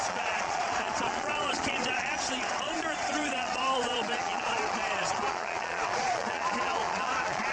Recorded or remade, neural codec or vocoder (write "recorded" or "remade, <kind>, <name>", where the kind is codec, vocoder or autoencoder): remade, vocoder, Vocos